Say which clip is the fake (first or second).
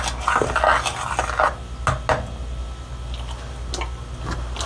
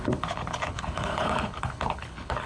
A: second